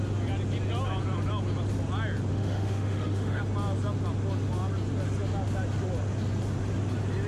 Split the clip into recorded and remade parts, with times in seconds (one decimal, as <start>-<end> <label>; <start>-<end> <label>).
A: 0.0-2.3 recorded; 2.3-3.4 remade; 3.4-7.3 recorded